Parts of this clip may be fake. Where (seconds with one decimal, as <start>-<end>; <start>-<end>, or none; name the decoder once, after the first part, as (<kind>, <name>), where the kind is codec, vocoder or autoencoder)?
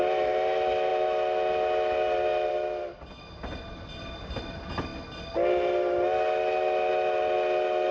none